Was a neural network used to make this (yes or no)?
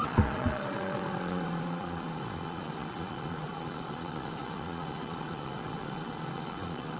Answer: yes